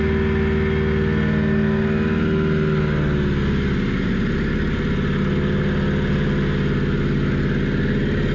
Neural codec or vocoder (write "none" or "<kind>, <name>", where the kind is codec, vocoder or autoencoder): none